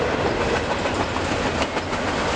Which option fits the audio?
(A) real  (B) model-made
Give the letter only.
A